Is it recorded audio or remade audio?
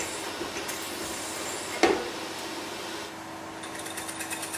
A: recorded